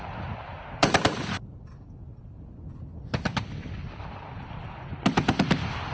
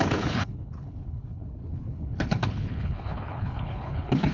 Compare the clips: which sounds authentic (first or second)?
first